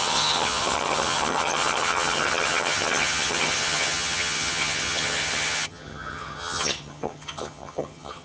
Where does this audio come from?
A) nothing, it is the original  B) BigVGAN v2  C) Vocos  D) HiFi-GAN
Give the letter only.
D